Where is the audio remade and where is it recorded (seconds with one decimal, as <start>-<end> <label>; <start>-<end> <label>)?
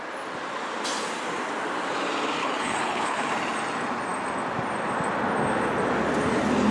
0.0-2.4 recorded; 2.4-3.3 remade; 3.3-6.7 recorded